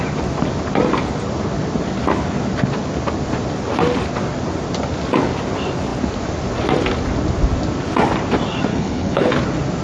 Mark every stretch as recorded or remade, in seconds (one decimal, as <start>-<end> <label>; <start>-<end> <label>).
0.0-8.7 recorded; 8.7-9.3 remade; 9.3-9.8 recorded